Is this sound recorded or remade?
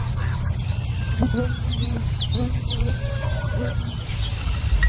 recorded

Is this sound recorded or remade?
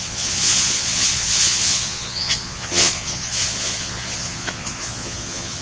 remade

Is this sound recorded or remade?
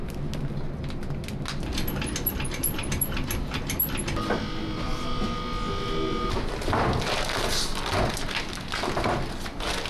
recorded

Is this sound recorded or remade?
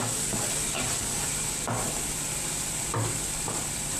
remade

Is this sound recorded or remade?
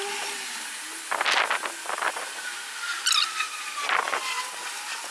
recorded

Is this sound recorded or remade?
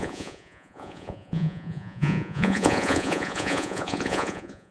remade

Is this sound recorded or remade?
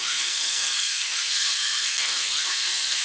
remade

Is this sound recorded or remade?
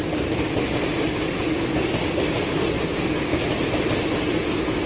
recorded